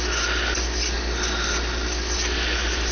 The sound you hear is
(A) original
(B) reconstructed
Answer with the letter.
A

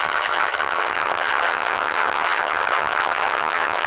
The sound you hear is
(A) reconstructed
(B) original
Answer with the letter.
A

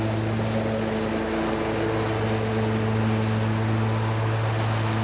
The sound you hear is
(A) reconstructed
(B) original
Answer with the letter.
B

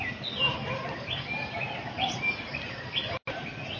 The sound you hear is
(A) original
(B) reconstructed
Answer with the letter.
A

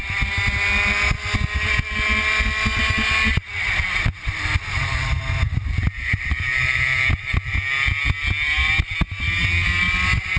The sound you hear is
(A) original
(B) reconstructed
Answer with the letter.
A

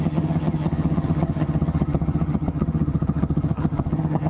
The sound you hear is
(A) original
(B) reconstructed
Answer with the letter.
B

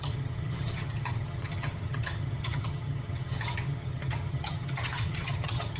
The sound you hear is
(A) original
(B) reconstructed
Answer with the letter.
B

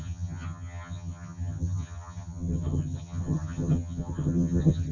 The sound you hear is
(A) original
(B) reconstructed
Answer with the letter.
B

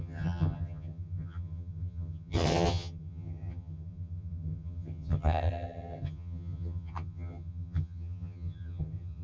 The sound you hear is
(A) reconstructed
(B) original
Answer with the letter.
A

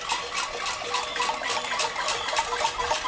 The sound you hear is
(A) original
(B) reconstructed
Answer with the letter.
A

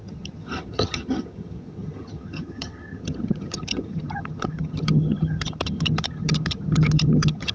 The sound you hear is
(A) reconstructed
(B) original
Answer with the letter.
A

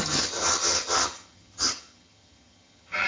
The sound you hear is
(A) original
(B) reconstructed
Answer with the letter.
B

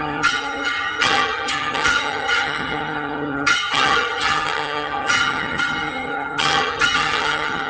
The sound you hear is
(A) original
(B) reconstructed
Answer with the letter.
B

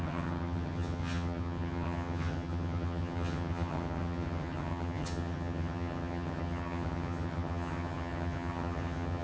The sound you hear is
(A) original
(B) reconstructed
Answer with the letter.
B